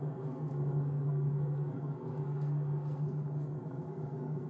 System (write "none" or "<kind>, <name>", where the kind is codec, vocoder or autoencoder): codec, SNAC